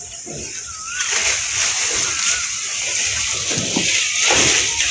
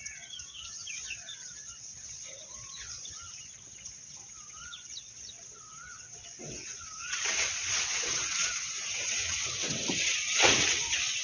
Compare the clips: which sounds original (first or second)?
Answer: first